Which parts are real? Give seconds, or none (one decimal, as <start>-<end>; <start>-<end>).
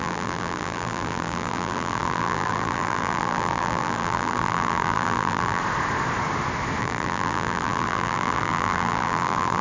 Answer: 5.6-6.8